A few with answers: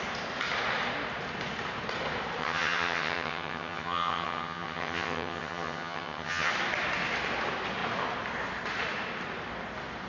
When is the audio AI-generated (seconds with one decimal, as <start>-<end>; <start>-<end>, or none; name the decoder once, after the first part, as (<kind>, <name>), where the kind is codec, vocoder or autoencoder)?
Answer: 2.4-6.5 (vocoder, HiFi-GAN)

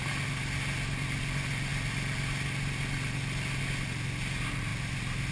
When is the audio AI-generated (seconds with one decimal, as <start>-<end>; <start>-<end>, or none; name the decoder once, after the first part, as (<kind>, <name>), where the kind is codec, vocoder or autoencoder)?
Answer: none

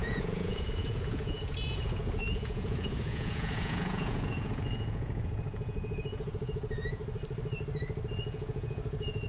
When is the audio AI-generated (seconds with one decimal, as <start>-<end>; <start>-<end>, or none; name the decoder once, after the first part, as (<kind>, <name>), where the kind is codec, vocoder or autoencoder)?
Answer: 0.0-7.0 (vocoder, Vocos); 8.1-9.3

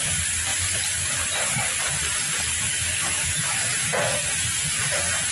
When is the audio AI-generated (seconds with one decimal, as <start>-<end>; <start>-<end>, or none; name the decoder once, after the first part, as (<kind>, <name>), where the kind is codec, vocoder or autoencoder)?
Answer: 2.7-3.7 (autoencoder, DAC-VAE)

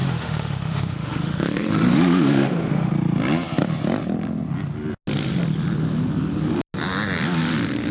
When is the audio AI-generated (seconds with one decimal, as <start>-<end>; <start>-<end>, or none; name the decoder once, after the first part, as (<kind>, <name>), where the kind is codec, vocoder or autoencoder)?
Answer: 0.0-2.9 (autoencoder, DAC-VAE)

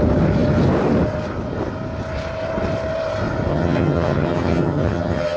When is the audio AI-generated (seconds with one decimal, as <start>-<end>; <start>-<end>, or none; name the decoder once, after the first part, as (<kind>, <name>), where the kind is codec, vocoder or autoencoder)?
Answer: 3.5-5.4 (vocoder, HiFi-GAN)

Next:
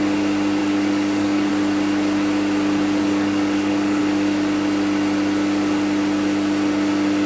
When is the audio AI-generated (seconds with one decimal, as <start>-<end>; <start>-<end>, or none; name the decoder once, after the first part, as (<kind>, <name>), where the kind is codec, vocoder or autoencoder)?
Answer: 0.6-1.5 (codec, DAC); 3.0-4.0